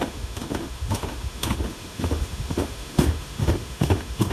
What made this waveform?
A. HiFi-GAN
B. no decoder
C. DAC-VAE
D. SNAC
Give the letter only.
C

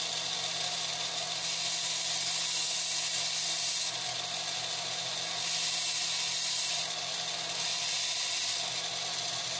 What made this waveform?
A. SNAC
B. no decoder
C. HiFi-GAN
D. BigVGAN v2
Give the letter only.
B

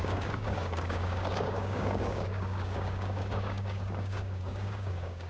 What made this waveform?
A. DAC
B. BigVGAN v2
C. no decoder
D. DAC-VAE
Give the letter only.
A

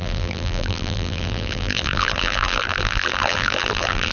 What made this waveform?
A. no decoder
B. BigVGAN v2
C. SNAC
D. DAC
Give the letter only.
B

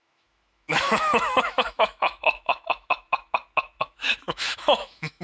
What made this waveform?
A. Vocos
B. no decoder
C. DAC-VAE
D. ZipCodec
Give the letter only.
C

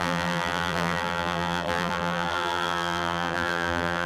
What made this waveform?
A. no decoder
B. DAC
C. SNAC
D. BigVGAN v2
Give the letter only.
D